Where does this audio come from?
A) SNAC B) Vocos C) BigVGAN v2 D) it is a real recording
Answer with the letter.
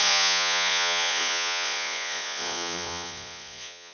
B